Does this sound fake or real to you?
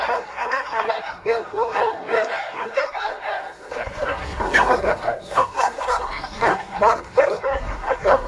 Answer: fake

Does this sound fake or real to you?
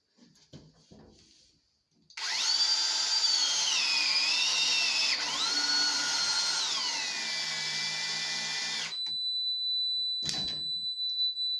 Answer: real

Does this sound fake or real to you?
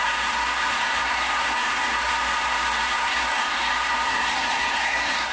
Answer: fake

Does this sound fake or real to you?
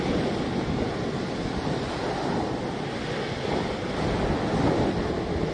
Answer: real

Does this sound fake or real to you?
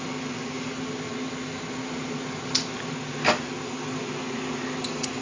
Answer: real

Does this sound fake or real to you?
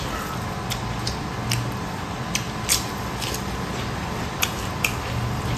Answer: real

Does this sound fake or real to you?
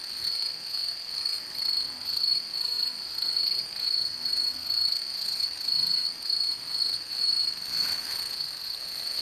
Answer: fake